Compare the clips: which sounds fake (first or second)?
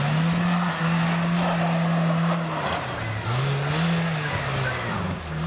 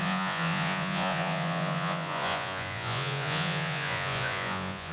second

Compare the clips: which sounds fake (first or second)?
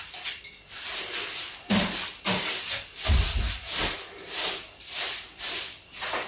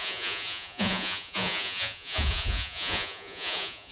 second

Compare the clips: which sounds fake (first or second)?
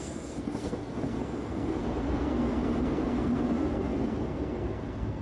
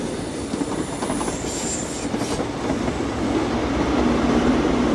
first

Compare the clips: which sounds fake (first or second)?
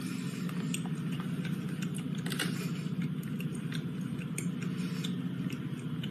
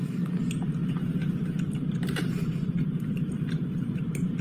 second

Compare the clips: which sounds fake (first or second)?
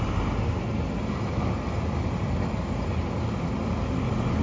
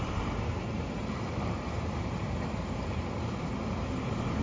second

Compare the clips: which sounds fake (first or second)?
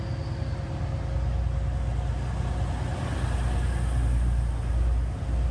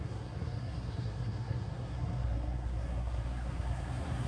second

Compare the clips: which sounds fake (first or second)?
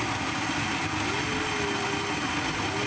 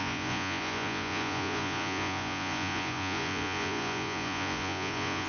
second